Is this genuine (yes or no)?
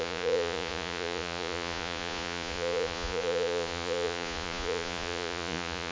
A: no